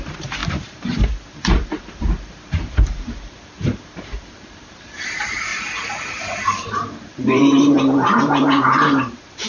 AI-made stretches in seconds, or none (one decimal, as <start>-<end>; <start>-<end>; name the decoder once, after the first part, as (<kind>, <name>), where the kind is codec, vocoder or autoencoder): 0.0-5.5 (vocoder, BigVGAN v2); 6.1-9.5